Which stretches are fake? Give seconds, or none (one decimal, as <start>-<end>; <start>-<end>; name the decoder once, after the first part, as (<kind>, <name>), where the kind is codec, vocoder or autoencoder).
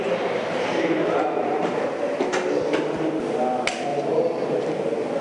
0.4-1.9 (vocoder, BigVGAN v2); 3.9-4.6